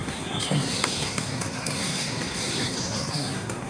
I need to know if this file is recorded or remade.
remade